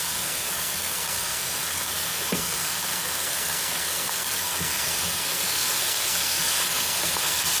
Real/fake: fake